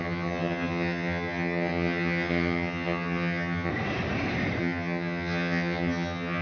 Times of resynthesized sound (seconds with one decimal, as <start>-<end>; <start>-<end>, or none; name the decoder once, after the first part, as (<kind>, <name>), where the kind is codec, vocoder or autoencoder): 0.0-3.7 (vocoder, HiFi-GAN); 4.6-6.4